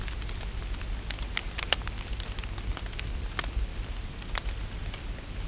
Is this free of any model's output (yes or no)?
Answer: yes